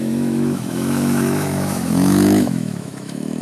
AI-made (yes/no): yes